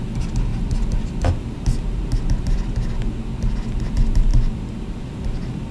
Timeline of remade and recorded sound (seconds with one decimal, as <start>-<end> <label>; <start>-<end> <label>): 0.0-5.7 recorded